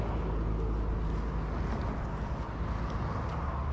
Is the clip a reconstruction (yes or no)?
no